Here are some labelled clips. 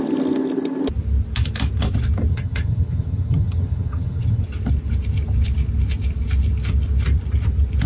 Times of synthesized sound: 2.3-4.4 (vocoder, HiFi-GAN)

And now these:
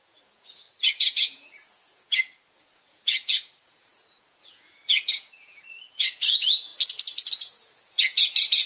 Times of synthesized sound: 0.0-6.7 (vocoder, Vocos); 7.3-8.7

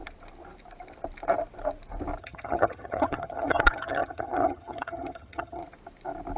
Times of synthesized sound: 2.2-5.6 (vocoder, HiFi-GAN)